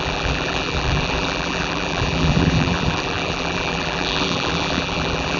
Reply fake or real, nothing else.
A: fake